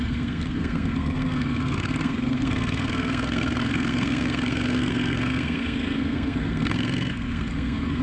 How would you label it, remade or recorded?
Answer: remade